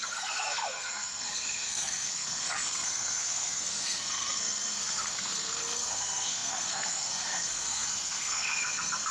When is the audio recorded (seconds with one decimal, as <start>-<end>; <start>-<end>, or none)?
none